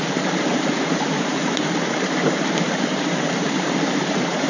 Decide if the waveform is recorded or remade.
remade